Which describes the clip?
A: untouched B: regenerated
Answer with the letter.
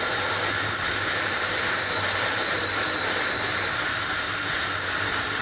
B